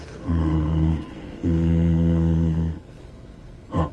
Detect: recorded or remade remade